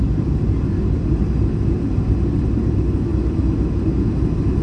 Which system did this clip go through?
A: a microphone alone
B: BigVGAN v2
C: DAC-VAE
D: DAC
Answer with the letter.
A